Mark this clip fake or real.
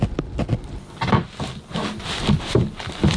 real